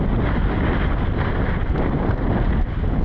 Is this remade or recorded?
recorded